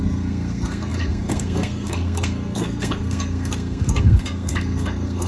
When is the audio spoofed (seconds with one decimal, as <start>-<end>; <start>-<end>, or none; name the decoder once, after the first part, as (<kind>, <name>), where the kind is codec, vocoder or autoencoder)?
0.0-5.3 (codec, SNAC)